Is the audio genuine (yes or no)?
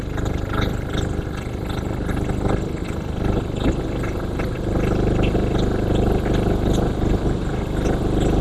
yes